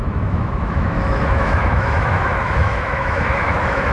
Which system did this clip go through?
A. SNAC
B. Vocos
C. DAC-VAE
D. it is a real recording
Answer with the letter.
C